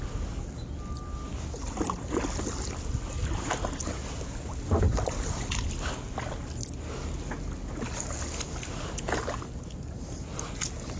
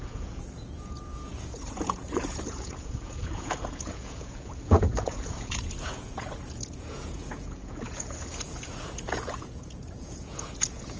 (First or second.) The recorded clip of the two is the first